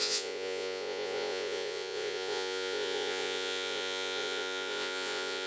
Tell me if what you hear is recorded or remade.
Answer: remade